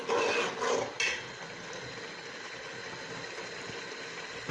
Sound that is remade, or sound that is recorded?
recorded